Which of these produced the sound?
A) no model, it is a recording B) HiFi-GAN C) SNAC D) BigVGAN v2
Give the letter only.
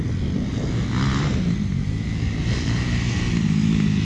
A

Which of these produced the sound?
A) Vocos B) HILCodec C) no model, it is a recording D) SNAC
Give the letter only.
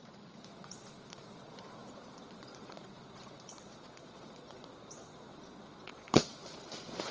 A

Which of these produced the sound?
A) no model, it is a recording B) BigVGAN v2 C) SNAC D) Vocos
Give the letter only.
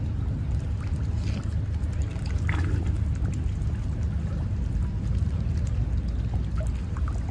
A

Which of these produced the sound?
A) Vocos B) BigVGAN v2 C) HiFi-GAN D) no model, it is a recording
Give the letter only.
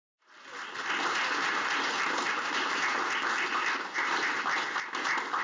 D